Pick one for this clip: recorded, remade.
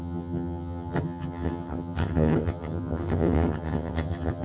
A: remade